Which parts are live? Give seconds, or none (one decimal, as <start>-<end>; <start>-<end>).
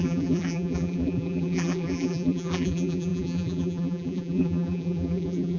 none